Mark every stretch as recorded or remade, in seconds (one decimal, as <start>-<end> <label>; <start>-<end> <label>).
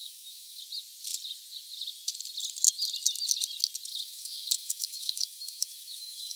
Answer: 0.0-0.6 remade; 0.6-3.9 recorded; 3.9-6.4 remade